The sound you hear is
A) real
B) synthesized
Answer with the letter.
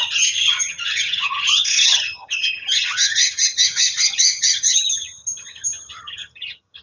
B